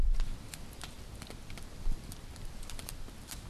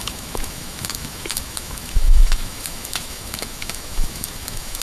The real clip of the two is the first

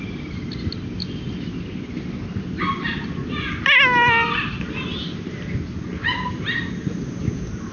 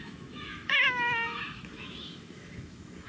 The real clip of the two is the first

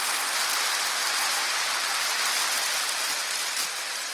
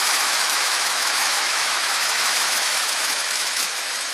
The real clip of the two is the first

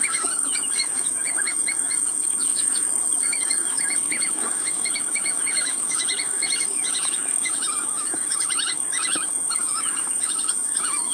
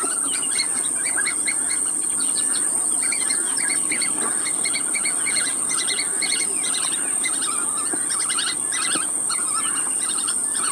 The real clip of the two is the second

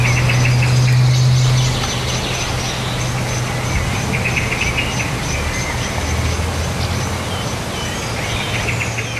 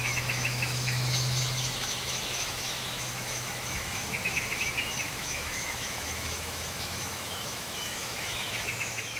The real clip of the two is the first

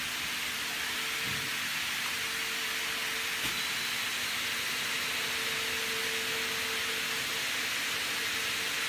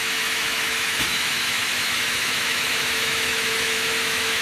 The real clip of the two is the first